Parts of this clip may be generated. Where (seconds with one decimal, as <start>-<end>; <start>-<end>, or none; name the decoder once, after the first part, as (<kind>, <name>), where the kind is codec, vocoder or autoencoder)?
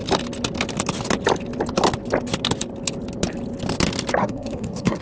4.2-5.0 (codec, SNAC)